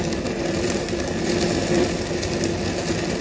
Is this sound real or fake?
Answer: real